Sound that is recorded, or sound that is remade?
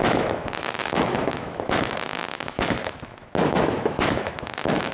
remade